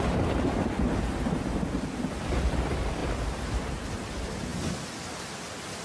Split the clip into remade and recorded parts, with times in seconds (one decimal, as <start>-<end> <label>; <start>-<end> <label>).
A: 0.0-3.0 recorded; 3.0-3.7 remade; 3.7-5.8 recorded